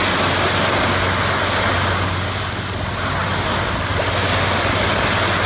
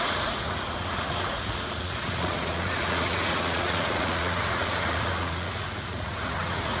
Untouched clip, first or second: first